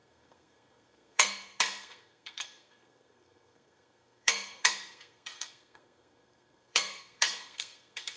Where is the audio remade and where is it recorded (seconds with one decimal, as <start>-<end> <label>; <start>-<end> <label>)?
0.0-8.2 remade